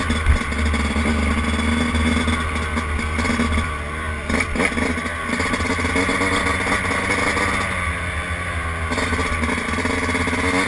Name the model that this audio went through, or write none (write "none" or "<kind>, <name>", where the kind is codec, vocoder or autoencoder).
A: none